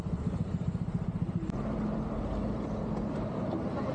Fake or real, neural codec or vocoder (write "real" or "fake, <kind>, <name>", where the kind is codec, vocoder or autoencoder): fake, vocoder, BigVGAN v2